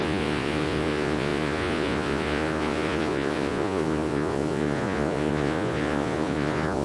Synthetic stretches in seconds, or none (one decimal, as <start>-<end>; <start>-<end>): 0.0-6.8